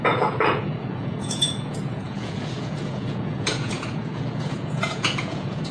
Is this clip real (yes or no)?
no